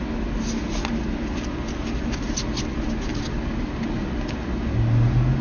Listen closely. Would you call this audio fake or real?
real